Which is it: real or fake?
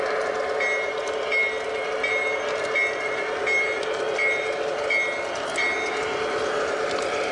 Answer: real